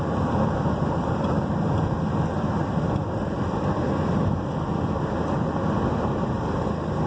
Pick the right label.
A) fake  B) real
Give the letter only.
B